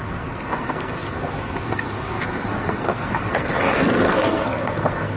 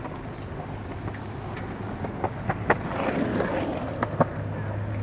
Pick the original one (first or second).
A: second